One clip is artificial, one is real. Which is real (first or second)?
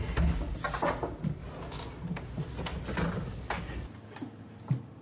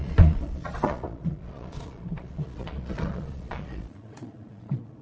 first